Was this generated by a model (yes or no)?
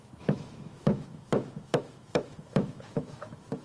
yes